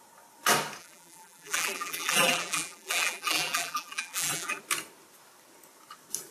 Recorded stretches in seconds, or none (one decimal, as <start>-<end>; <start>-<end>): 0.0-0.8; 4.6-6.3